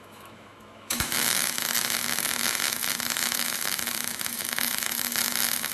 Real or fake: fake